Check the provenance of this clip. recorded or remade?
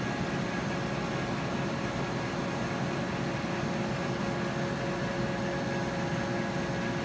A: recorded